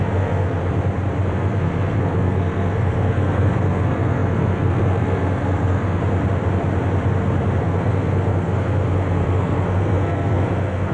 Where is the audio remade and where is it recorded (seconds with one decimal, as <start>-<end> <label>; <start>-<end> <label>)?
0.0-0.6 remade; 0.6-1.3 recorded; 1.3-6.0 remade; 6.0-7.6 recorded; 7.6-10.9 remade